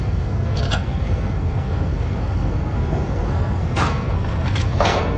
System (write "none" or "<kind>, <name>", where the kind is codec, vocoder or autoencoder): codec, SNAC